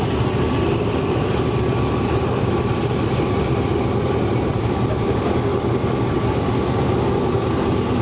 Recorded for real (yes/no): yes